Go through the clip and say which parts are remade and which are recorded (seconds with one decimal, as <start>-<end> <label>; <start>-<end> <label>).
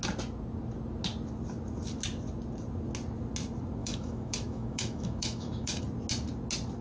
0.0-3.8 recorded; 3.8-5.8 remade; 5.8-6.8 recorded